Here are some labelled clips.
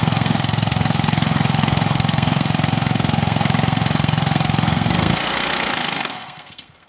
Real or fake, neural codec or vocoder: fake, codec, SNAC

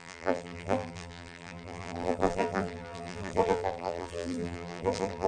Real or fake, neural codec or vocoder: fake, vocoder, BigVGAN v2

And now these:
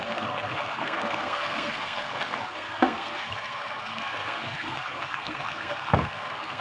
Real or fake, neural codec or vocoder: fake, codec, SNAC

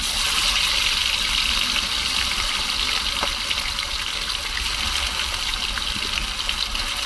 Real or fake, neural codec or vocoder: real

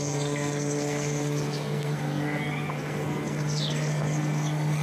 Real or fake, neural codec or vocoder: fake, codec, SNAC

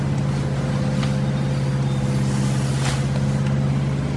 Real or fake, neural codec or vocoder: real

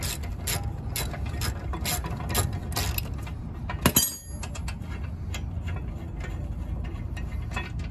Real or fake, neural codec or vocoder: real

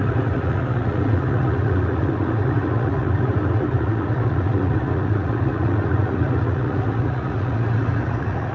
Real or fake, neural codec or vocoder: fake, vocoder, Vocos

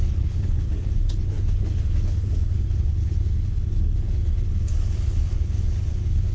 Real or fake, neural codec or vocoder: fake, codec, HILCodec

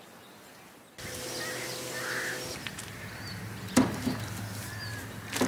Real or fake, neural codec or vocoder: real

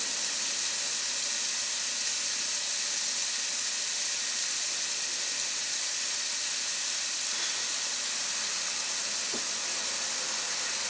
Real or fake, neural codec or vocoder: real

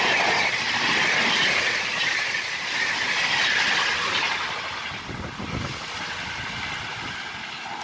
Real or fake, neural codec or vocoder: real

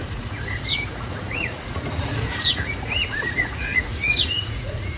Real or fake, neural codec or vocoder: fake, vocoder, Vocos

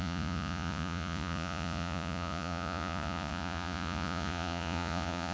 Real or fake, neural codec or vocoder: fake, vocoder, Vocos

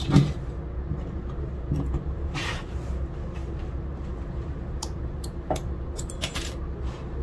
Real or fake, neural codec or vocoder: fake, vocoder, BigVGAN v2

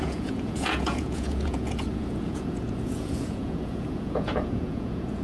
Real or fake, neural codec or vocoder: fake, vocoder, Vocos